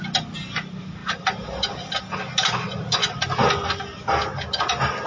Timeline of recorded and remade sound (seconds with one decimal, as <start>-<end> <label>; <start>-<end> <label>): 0.0-5.1 recorded